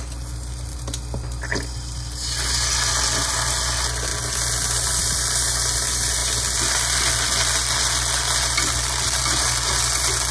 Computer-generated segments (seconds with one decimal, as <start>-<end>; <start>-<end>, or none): none